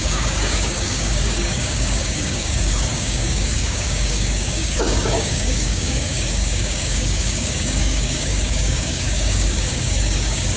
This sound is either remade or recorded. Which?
remade